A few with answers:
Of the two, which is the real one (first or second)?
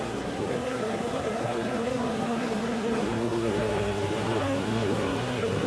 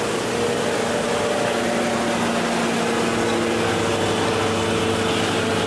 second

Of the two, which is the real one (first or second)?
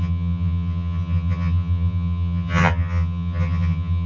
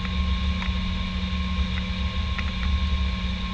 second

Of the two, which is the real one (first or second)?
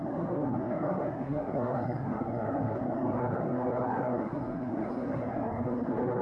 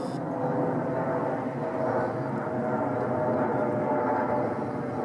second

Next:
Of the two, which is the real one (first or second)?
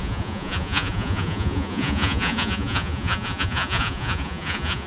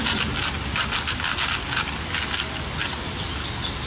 second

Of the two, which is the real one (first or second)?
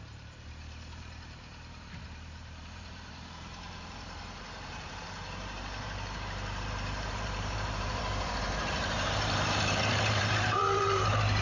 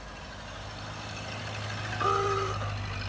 second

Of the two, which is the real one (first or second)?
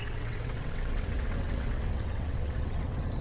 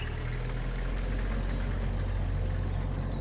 second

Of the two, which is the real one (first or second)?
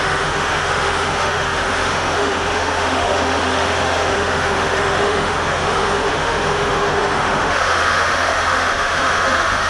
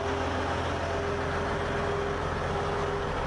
second